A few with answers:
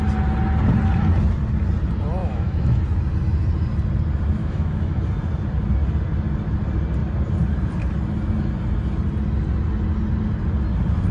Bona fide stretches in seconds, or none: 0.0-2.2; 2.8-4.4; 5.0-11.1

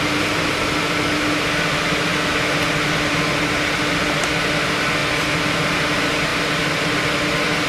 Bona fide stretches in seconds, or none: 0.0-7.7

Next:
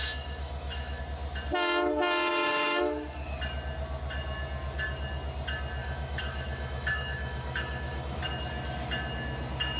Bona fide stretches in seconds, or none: 1.0-2.3; 2.8-5.8; 8.2-9.8

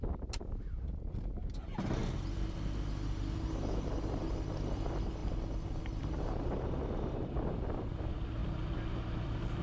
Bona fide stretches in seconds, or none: 0.0-9.6

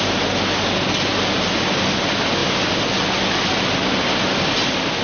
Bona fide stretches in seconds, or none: 0.0-5.0

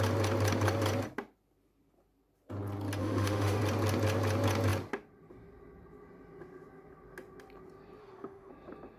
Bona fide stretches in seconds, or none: 0.0-3.0; 3.6-8.0; 8.5-9.0

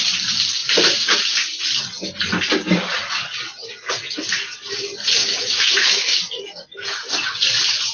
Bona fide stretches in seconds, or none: 0.0-5.2; 6.2-7.9